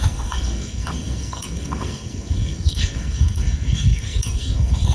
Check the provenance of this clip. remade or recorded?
remade